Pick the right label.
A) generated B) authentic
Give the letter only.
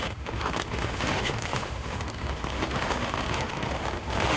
A